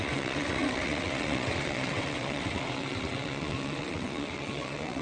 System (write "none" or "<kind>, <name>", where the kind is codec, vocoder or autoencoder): vocoder, WaveNeXt